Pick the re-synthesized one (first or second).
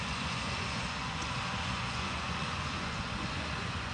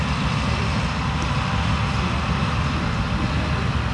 first